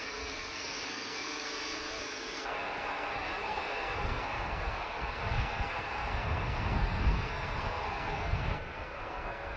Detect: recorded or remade remade